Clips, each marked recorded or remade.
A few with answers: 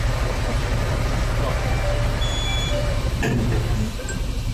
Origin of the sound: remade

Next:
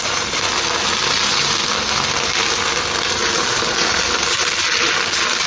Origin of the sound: recorded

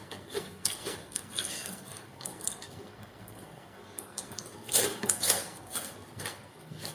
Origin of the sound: remade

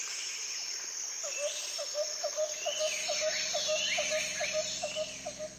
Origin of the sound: recorded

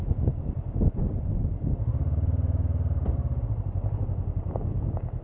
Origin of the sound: recorded